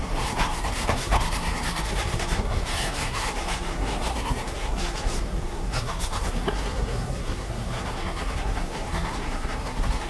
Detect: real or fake fake